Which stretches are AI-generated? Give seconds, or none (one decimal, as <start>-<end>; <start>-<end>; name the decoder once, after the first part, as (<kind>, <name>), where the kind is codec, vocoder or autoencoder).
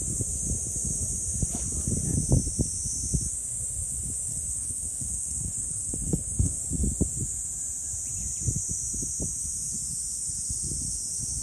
4.3-6.6 (codec, SNAC)